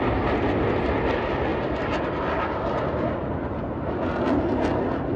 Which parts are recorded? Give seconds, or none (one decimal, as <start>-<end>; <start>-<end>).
0.0-5.2